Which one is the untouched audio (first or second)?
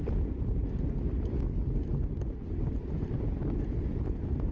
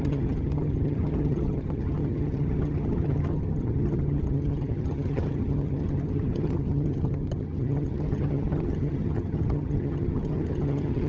first